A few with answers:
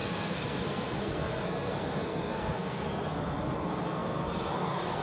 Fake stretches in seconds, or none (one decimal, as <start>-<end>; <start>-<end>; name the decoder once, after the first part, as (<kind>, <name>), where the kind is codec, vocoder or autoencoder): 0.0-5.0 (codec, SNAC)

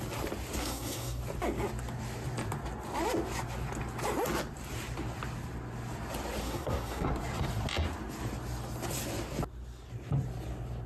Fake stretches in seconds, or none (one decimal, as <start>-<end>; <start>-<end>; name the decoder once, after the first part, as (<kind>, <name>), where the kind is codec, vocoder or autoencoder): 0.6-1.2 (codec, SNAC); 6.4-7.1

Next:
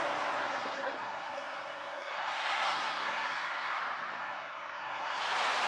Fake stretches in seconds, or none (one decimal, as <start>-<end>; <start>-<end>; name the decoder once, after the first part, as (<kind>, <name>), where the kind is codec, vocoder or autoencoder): 0.4-3.8 (codec, SNAC); 4.2-5.2